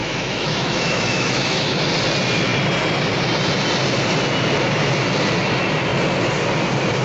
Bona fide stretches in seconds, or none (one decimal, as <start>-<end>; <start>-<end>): 1.8-7.0